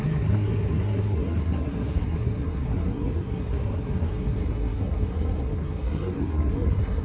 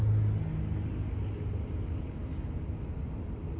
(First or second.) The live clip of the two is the second